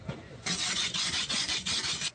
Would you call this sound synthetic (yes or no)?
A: yes